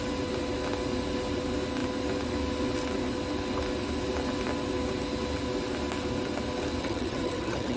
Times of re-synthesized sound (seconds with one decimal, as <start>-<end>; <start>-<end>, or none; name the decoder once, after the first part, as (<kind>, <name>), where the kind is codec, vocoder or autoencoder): 6.8-7.8 (vocoder, HiFi-GAN)